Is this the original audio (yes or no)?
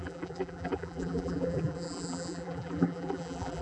no